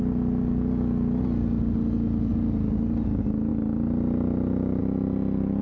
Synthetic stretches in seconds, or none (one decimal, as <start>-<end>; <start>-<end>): 3.5-4.8